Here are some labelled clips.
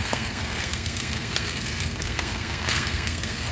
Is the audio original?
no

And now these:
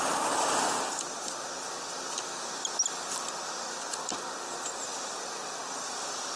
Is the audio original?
yes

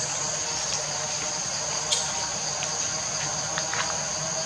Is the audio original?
yes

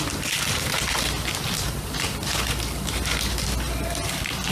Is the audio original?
yes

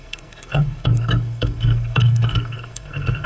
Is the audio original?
no